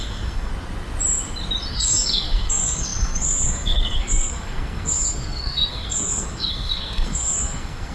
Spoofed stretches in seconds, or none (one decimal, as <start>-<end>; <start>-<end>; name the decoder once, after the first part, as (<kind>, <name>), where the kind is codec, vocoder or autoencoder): 0.0-0.5 (codec, SNAC); 1.7-7.9